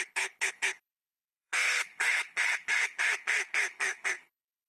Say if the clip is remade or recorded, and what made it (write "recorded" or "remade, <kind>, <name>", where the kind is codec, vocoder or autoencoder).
remade, codec, HILCodec